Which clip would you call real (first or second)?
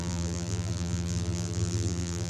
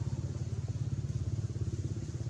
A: second